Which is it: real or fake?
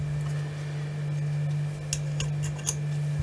real